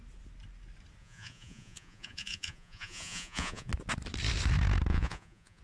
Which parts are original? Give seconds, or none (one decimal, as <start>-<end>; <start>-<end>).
0.0-1.0; 3.7-4.9